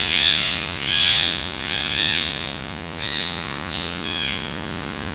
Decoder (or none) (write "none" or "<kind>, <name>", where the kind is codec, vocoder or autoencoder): vocoder, Vocos